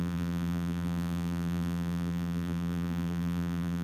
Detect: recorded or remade remade